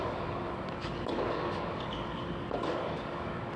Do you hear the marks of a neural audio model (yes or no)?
yes